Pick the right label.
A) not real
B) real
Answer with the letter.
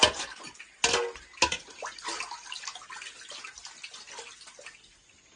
B